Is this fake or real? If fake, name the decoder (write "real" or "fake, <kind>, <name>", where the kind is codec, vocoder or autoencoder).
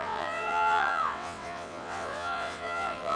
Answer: fake, vocoder, WaveNeXt